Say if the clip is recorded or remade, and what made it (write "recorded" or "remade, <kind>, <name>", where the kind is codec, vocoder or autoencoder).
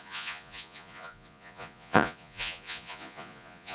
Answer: remade, vocoder, Vocos